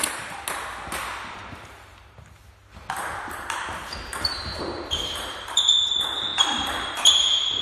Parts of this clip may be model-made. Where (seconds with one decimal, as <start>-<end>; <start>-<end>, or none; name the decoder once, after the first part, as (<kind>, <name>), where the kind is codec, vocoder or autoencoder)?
1.3-2.4 (vocoder, BigVGAN v2); 3.8-6.3; 6.8-7.6